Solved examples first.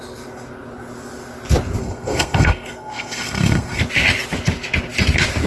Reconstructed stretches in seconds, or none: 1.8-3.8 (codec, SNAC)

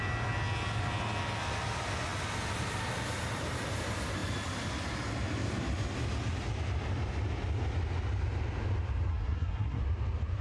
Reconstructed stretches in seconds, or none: 9.1-9.8 (codec, SNAC)

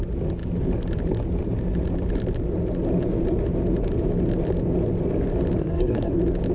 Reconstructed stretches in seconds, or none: 5.6-6.1 (codec, SNAC)

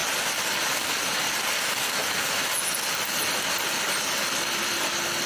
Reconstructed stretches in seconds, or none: none

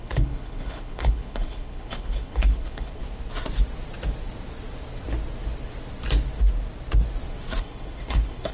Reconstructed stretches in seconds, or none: 0.0-3.0 (codec, HILCodec); 7.6-8.5